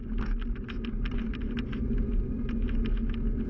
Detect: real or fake real